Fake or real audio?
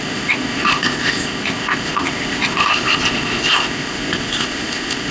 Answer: fake